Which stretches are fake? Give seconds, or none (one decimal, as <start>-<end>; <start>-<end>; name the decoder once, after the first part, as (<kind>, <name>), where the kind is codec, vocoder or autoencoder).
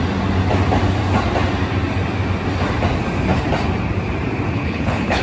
4.5-5.2 (codec, HILCodec)